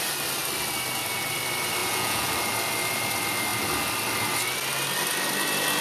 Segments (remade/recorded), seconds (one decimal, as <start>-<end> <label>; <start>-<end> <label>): 0.0-1.8 recorded; 1.8-2.3 remade; 2.3-5.8 recorded